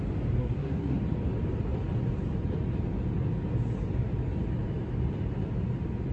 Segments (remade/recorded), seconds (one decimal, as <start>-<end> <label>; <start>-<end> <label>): 0.0-0.4 recorded; 0.4-1.0 remade; 1.0-6.1 recorded